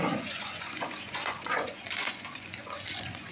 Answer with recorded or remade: remade